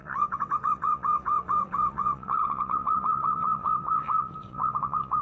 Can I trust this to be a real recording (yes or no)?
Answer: no